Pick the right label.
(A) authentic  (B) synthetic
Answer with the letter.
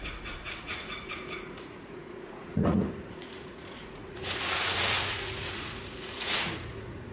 B